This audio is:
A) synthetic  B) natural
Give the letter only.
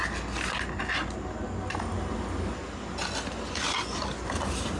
B